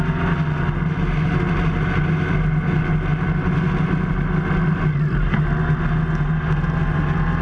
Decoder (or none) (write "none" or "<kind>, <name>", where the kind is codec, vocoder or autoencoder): none